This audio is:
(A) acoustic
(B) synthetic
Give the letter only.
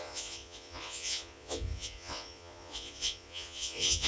B